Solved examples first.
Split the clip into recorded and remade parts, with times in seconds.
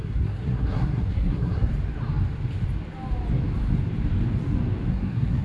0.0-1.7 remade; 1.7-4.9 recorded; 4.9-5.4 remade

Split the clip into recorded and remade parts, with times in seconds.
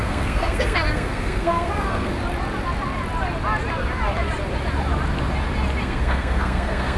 0.0-2.2 remade; 2.2-5.8 recorded; 5.8-7.0 remade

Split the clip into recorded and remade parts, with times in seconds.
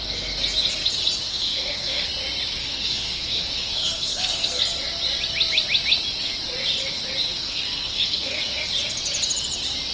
0.0-1.3 recorded; 1.3-2.1 remade; 2.1-2.6 recorded; 2.6-4.6 remade; 4.6-7.3 recorded; 7.3-8.4 remade; 8.4-9.9 recorded